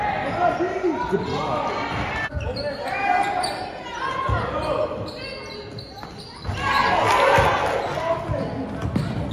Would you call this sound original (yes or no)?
yes